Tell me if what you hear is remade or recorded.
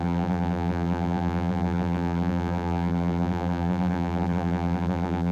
remade